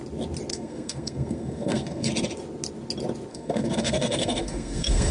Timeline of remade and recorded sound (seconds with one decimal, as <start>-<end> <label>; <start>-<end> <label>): 0.0-0.5 recorded; 0.5-2.1 remade; 2.1-3.3 recorded; 3.3-5.1 remade